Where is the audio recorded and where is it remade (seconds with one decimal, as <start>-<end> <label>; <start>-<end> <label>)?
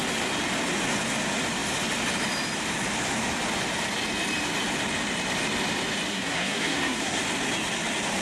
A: 0.0-6.1 recorded; 6.1-7.2 remade; 7.2-8.2 recorded